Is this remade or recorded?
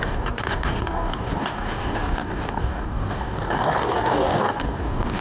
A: remade